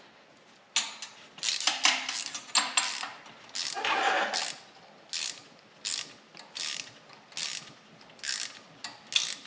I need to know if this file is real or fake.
real